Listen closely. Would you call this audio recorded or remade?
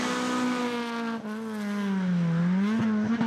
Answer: recorded